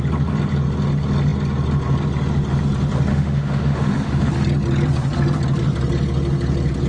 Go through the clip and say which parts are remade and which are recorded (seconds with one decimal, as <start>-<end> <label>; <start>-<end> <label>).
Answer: 0.0-3.1 recorded; 3.1-4.3 remade; 4.3-6.9 recorded